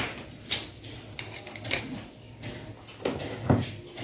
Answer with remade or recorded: recorded